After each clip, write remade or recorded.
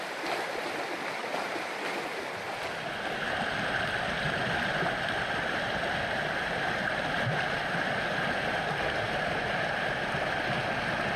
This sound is recorded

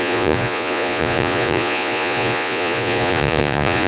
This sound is remade